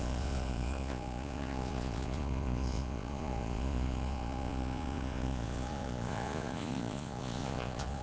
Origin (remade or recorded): remade